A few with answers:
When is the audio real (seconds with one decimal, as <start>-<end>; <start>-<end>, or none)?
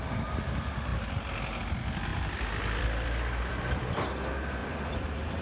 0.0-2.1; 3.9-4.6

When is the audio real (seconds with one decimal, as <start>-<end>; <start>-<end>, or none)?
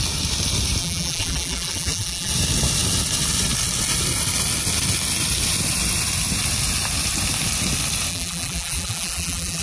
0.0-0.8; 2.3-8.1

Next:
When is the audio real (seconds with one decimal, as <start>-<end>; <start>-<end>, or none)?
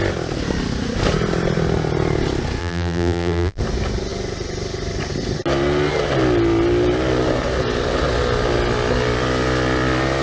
0.0-2.6; 3.6-10.2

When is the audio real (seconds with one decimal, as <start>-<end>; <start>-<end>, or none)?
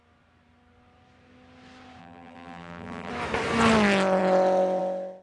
0.0-2.0; 3.1-5.2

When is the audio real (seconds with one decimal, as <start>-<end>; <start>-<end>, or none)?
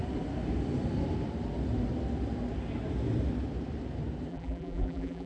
0.0-4.3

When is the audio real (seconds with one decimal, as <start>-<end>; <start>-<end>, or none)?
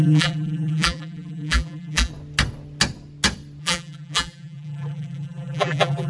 2.1-3.6